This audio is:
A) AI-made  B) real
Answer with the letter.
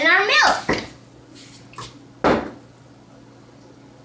B